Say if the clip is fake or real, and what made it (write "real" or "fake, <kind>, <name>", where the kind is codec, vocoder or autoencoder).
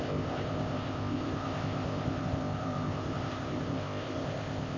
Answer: fake, codec, ZipCodec